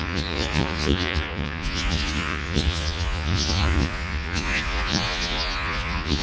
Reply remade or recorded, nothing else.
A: remade